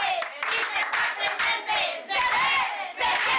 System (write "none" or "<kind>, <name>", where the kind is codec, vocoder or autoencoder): none